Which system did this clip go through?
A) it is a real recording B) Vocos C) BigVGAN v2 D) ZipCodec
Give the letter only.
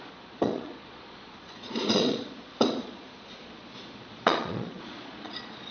B